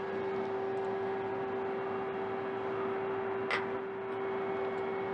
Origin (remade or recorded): recorded